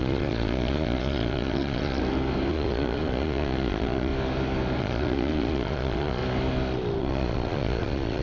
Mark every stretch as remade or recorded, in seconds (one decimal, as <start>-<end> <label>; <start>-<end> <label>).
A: 0.0-2.0 remade; 2.0-2.5 recorded; 2.5-4.1 remade; 4.1-4.8 recorded; 4.8-6.2 remade; 6.2-7.0 recorded; 7.0-8.2 remade